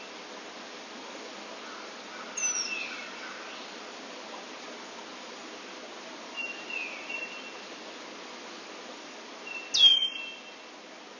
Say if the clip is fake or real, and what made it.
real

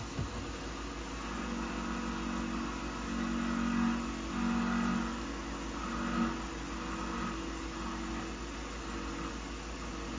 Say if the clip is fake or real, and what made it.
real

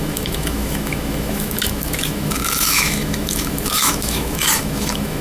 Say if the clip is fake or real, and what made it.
fake, autoencoder, DAC-VAE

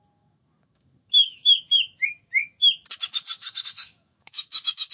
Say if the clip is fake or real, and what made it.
fake, autoencoder, DAC-VAE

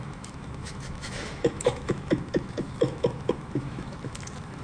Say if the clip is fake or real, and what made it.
fake, autoencoder, DAC-VAE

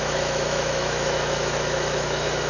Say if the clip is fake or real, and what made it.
fake, autoencoder, DAC-VAE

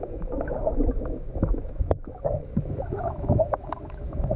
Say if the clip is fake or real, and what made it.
fake, autoencoder, DAC-VAE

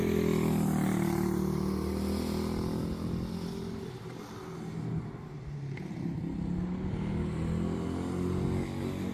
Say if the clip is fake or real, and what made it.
real